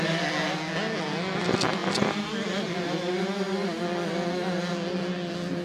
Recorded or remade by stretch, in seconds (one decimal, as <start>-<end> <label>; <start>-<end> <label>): 0.0-5.6 recorded